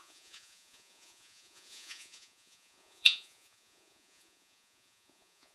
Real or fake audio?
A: fake